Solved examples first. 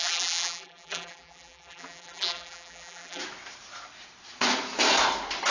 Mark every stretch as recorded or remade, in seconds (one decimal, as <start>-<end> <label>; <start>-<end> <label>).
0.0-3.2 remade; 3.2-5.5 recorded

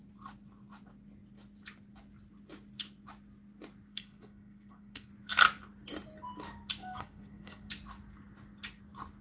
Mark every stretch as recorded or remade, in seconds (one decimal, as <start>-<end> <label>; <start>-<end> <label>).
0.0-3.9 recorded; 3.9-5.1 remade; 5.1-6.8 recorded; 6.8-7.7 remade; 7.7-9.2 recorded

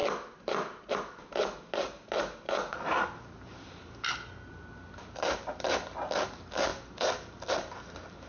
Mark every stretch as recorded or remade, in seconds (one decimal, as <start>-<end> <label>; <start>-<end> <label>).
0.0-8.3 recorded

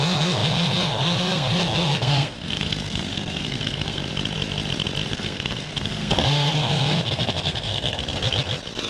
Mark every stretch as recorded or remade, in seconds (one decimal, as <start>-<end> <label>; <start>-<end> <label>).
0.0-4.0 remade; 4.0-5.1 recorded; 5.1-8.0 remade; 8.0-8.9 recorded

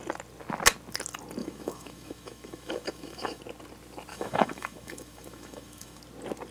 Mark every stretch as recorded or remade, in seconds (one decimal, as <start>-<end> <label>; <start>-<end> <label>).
0.0-1.4 recorded; 1.4-3.4 remade; 3.4-4.1 recorded; 4.1-6.0 remade; 6.0-6.5 recorded

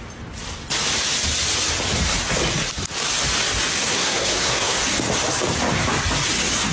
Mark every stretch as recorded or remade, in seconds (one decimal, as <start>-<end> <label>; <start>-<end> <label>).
0.0-3.8 recorded; 3.8-4.8 remade; 4.8-6.7 recorded

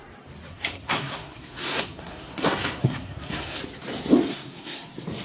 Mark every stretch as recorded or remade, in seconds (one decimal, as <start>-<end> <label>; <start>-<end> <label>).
0.0-0.5 recorded; 0.5-3.6 remade; 3.6-4.3 recorded; 4.3-4.8 remade; 4.8-5.2 recorded